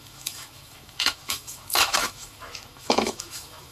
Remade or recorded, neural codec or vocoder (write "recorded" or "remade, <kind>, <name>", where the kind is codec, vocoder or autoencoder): remade, autoencoder, DAC-VAE